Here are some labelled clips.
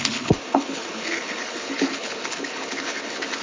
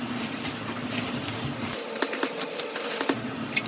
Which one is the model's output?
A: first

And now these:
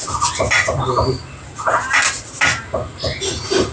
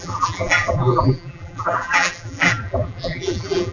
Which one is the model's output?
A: second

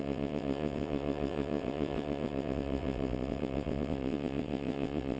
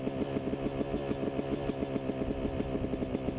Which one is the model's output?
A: first